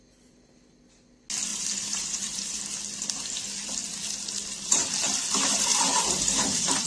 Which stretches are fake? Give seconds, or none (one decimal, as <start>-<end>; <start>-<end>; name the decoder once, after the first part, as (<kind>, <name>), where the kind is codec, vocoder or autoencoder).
1.5-2.6 (vocoder, BigVGAN v2); 5.4-6.9